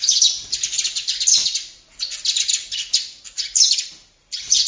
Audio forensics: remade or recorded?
recorded